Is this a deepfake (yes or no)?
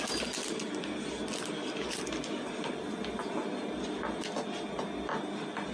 no